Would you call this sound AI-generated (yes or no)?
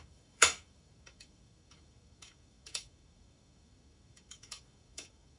yes